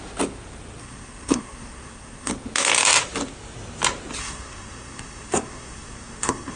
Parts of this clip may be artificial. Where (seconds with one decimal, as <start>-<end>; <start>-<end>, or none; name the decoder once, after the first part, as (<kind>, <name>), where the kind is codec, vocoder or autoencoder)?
0.8-2.3 (codec, SNAC); 4.2-6.6